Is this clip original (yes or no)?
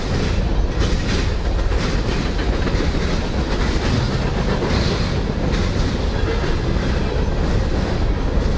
yes